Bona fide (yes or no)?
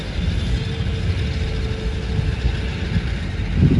yes